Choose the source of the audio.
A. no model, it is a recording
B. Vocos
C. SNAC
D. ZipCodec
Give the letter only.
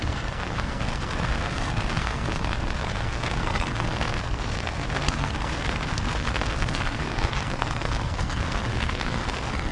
C